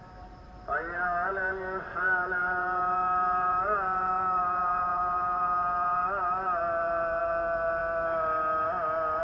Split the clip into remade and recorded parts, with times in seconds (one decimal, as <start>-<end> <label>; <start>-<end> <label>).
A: 0.0-7.8 remade; 7.8-9.2 recorded